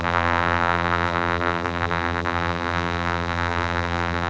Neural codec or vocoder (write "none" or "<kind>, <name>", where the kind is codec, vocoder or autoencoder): vocoder, BigVGAN v2